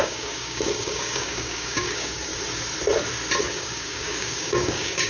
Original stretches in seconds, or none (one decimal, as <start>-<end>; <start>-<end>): 2.3-3.4